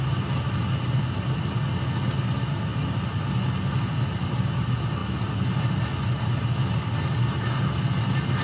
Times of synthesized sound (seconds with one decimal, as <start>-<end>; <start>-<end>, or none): none